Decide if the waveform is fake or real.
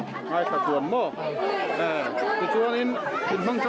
real